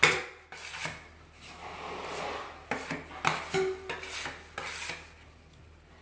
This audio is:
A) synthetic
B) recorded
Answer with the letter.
B